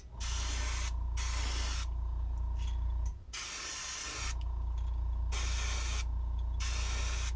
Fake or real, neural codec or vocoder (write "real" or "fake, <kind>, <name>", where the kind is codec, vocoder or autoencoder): real